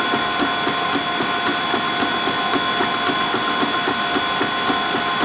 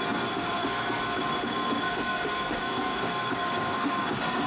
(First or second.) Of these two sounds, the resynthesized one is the second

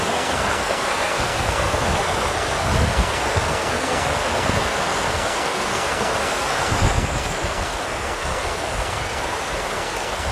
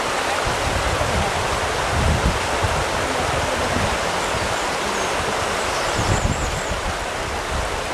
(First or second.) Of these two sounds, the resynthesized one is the first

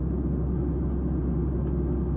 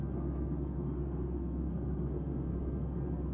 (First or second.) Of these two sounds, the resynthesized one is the second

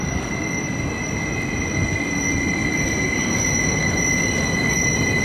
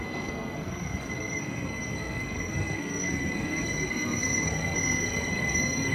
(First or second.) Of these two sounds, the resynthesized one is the second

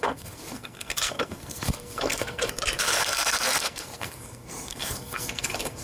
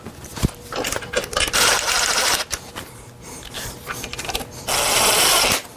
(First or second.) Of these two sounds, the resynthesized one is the first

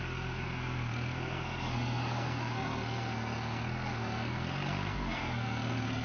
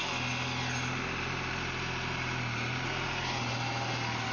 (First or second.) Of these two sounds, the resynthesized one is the first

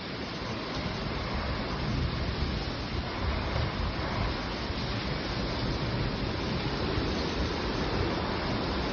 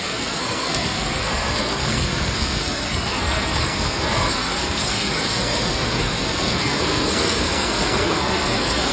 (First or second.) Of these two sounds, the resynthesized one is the second